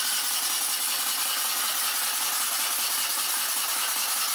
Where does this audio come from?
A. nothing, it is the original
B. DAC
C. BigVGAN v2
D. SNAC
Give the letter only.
A